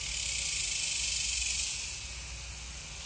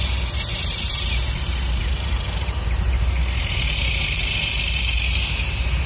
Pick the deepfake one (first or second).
second